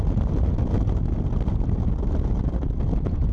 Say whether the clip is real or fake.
real